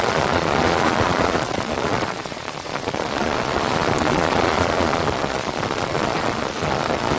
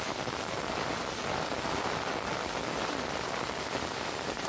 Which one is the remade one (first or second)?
first